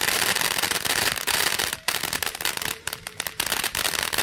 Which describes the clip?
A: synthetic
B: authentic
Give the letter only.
A